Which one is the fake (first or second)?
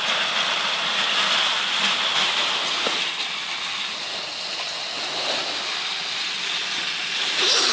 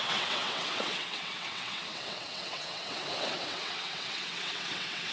second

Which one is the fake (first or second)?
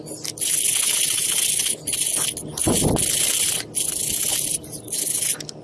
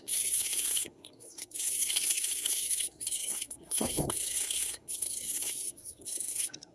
second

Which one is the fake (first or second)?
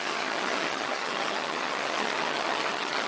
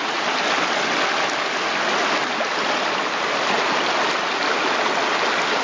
first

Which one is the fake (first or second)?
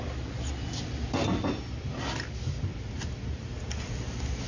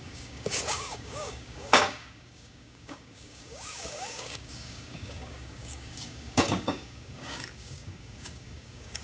second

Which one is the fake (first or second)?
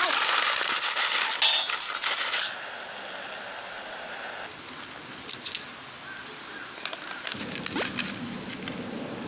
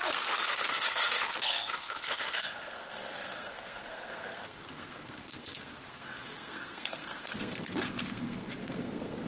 second